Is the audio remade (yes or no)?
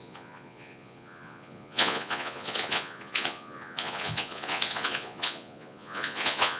yes